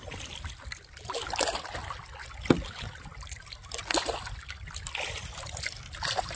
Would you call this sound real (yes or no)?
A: yes